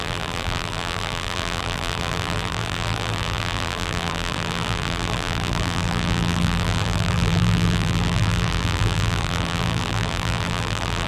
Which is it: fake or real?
fake